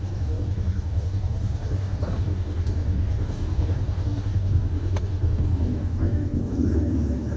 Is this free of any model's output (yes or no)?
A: no